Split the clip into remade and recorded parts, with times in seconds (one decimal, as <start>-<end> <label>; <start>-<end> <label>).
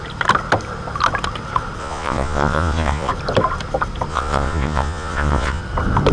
0.0-1.8 recorded; 1.8-3.1 remade; 3.1-4.1 recorded; 4.1-5.6 remade; 5.6-6.1 recorded